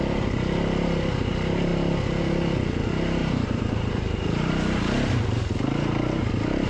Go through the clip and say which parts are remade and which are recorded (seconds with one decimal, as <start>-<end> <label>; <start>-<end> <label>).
0.0-3.2 recorded; 3.2-4.5 remade; 4.5-6.7 recorded